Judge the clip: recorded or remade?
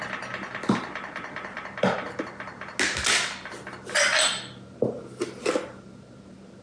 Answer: recorded